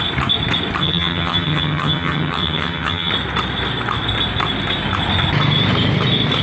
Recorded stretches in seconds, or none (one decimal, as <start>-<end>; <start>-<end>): 0.0-0.8; 3.1-6.4